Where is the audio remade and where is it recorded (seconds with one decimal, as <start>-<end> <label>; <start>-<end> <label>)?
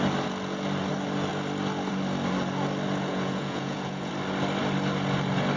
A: 0.0-3.1 recorded; 3.1-4.1 remade; 4.1-5.6 recorded